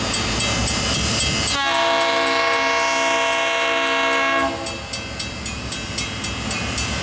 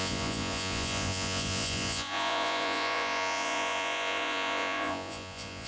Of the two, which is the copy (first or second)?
second